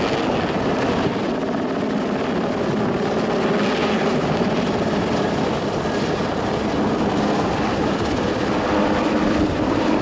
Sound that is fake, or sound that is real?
real